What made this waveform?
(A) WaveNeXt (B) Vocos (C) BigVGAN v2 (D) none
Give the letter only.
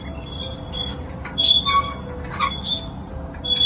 D